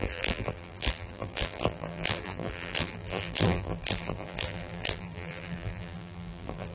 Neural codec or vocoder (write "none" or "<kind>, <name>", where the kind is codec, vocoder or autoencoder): vocoder, BigVGAN v2